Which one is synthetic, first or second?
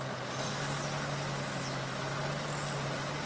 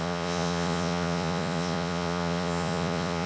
second